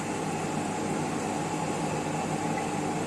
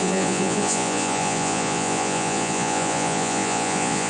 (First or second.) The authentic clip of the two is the first